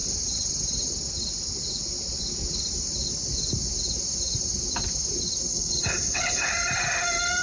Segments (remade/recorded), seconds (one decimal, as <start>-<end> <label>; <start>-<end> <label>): 0.0-5.5 recorded; 5.5-6.5 remade; 6.5-7.4 recorded